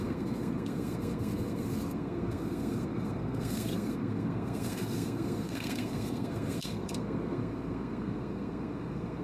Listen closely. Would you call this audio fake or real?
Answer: fake